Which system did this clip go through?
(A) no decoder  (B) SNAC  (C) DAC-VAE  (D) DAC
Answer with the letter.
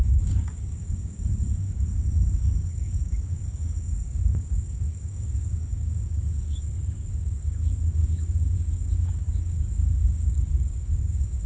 D